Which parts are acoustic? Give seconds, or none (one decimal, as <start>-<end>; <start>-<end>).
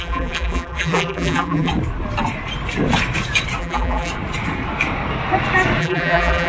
1.7-3.6; 4.1-5.8